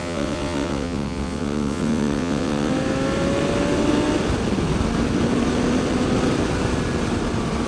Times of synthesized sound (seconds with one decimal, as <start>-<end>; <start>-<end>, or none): 0.0-2.7